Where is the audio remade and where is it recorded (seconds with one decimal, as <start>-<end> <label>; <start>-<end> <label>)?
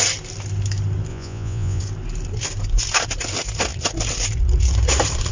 0.0-1.1 recorded; 1.1-1.8 remade; 1.8-5.3 recorded